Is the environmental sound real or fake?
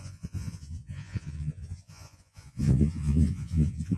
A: fake